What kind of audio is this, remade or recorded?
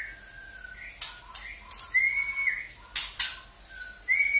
recorded